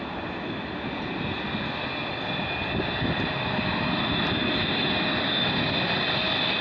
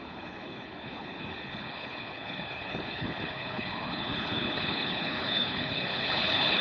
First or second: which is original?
first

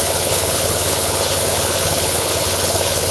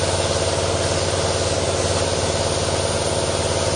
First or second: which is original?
second